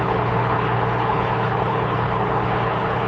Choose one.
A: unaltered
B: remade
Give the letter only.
B